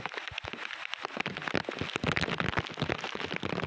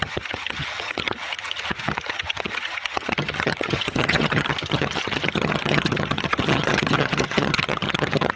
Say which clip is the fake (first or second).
second